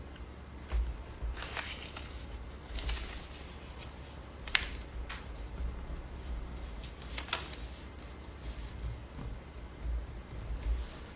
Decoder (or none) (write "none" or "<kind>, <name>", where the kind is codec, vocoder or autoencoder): none